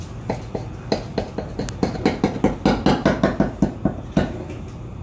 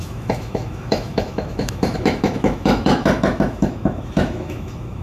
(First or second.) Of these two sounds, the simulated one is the second